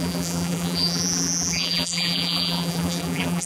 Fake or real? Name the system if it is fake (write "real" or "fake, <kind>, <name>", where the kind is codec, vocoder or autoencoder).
fake, vocoder, BigVGAN v2